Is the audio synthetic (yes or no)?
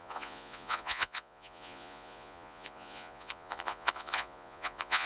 yes